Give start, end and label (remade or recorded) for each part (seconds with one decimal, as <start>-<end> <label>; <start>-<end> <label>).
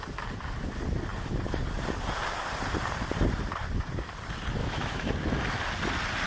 0.0-4.6 recorded; 4.6-5.1 remade; 5.1-6.3 recorded